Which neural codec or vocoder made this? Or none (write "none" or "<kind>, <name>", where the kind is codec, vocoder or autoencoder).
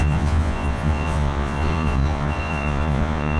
vocoder, Vocos